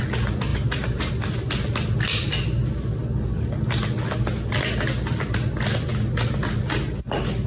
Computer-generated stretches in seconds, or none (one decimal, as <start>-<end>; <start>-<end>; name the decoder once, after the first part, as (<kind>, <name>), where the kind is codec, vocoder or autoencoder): 0.5-1.1 (vocoder, BigVGAN v2)